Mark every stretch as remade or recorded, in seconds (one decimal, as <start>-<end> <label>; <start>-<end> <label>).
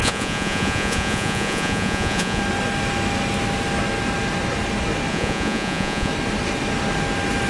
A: 0.0-2.4 remade; 2.4-5.1 recorded; 5.1-6.1 remade; 6.1-7.5 recorded